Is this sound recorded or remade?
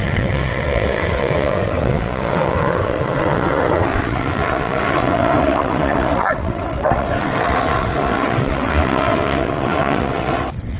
remade